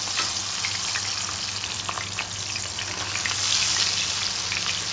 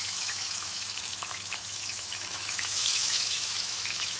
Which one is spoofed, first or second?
second